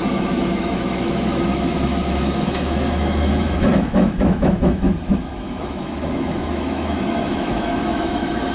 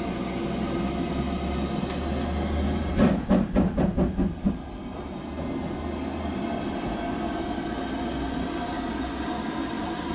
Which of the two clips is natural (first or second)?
second